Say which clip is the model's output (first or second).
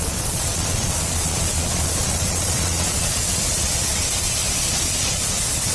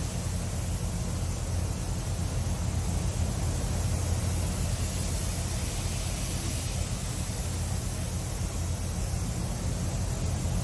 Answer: first